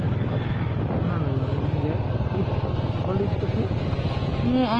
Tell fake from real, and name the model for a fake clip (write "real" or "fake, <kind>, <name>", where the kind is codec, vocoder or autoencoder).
real